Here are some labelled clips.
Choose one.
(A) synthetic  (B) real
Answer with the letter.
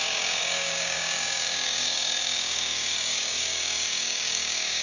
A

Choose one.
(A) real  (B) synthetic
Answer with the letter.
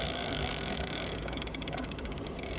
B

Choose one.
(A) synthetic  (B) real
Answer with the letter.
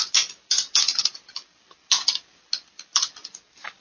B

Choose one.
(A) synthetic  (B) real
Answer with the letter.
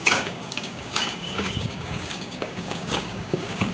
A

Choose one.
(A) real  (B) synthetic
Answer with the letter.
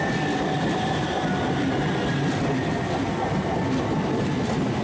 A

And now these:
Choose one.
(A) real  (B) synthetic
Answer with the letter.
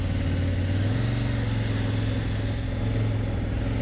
A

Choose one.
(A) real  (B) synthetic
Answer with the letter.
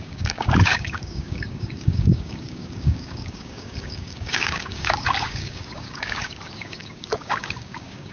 B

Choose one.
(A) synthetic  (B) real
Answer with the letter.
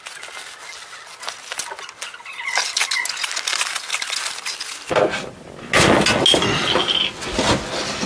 B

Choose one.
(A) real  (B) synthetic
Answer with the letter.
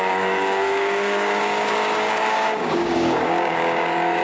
B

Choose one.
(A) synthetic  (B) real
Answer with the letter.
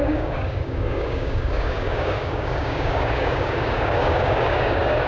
A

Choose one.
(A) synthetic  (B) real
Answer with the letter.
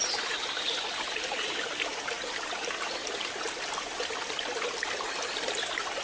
B